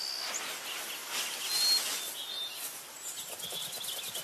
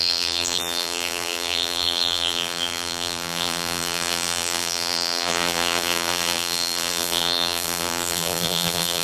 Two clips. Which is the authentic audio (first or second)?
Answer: first